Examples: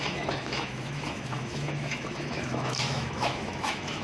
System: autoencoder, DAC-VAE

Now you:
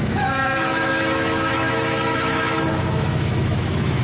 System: autoencoder, DAC-VAE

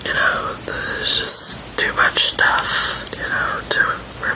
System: none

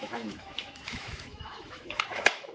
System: autoencoder, DAC-VAE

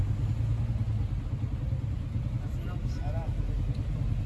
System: none